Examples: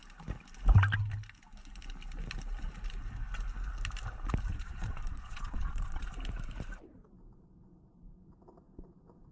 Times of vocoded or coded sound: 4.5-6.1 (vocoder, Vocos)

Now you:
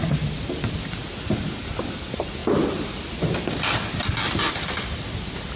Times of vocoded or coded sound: none